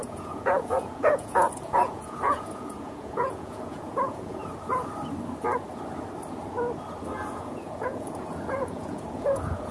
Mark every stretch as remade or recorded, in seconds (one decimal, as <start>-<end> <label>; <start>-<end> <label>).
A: 0.0-4.4 remade; 4.4-7.3 recorded; 7.3-9.7 remade